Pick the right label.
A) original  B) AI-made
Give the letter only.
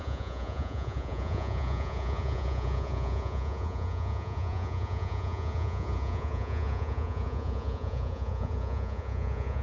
B